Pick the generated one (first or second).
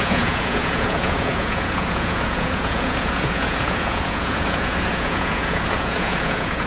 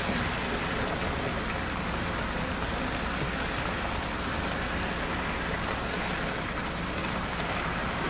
first